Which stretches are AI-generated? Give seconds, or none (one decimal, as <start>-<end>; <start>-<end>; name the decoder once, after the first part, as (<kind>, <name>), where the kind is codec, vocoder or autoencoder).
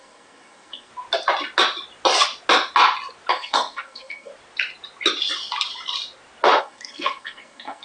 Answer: 0.0-0.9 (codec, SNAC); 3.3-4.3; 6.6-7.8